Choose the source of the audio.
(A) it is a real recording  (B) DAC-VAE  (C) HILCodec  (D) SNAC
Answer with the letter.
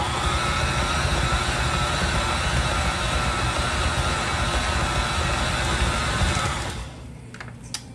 A